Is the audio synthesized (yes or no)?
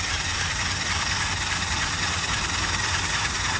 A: no